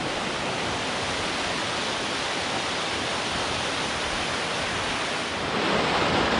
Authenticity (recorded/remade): recorded